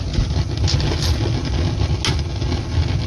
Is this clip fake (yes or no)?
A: no